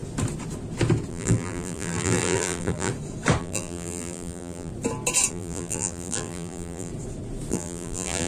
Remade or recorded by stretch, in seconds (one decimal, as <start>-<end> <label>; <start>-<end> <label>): 0.0-1.1 recorded; 1.1-2.9 remade; 2.9-3.4 recorded; 3.4-4.7 remade; 4.7-5.3 recorded; 5.3-6.9 remade; 6.9-7.5 recorded; 7.5-8.3 remade